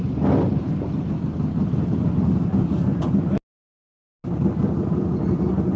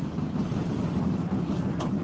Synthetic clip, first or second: second